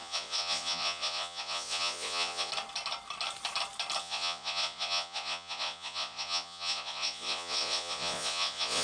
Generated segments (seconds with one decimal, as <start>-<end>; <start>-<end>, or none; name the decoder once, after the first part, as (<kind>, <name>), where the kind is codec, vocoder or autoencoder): 0.0-2.5 (vocoder, Vocos); 4.0-8.8